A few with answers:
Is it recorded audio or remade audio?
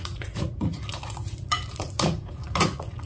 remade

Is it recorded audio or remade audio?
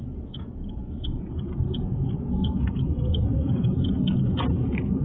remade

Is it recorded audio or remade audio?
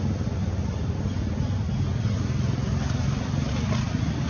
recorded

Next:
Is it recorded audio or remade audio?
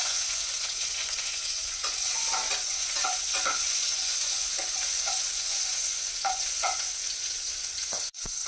remade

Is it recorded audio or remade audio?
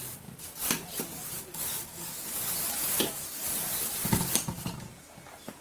recorded